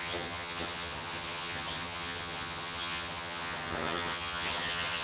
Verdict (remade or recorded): remade